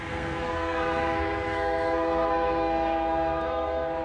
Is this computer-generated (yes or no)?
yes